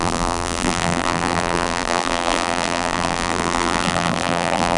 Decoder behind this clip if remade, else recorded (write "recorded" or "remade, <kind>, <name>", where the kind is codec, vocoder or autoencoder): remade, vocoder, BigVGAN v2